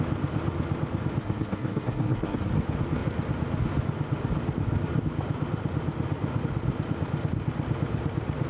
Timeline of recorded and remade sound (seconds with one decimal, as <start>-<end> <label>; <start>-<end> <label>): 0.0-1.2 recorded; 1.2-2.5 remade; 2.5-8.5 recorded